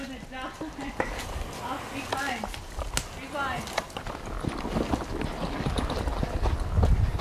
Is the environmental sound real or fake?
real